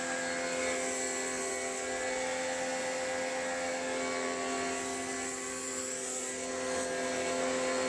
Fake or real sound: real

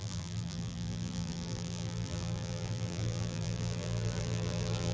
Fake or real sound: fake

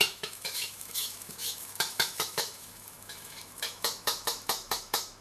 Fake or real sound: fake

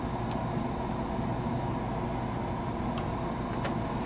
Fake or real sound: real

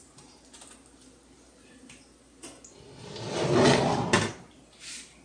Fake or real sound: real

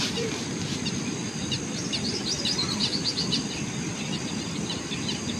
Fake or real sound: real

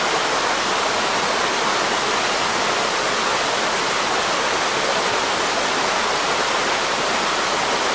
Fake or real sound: real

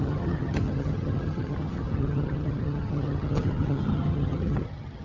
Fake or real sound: fake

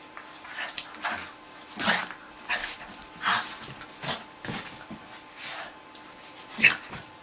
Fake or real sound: real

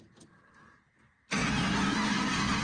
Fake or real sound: real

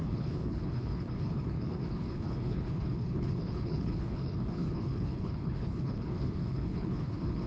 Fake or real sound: fake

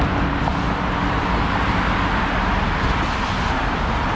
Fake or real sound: real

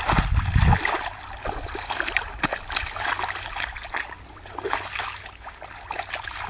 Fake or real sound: real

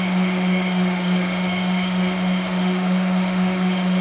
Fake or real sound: fake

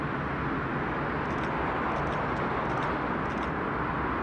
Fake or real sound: real